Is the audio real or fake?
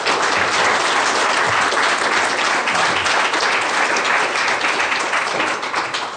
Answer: real